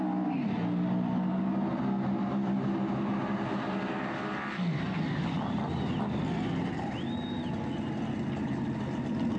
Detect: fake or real real